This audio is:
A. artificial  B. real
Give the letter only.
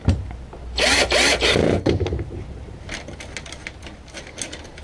B